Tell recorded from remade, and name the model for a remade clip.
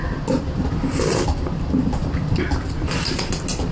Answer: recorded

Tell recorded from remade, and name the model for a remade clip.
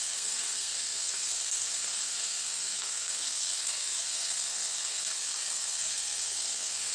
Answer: remade, codec, SNAC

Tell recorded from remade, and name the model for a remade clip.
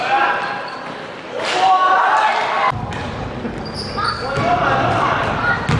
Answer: recorded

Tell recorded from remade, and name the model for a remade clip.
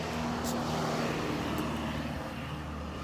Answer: recorded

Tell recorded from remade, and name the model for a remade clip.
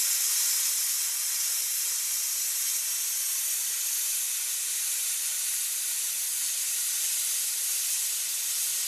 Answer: recorded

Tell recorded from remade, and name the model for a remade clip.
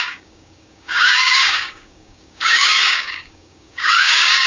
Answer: remade, codec, DAC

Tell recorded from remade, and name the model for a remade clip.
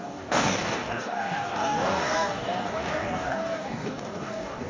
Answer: remade, codec, DAC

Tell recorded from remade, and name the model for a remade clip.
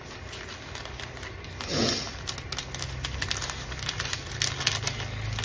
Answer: recorded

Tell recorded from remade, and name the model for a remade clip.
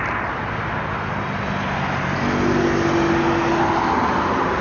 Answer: recorded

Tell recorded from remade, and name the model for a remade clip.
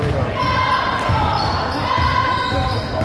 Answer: recorded